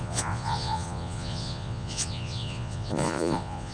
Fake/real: fake